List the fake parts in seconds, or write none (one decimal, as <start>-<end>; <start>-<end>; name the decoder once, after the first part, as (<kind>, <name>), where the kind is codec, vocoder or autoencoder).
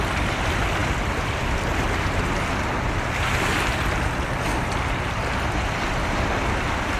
none